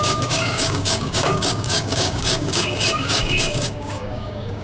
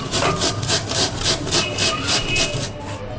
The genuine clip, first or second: second